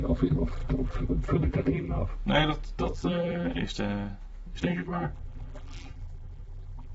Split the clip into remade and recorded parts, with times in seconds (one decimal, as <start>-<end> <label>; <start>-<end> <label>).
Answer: 0.0-2.0 remade; 2.0-2.8 recorded; 2.8-3.6 remade; 3.6-4.6 recorded; 4.6-6.9 remade